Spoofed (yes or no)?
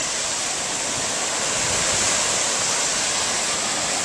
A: no